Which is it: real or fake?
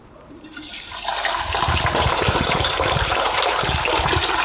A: fake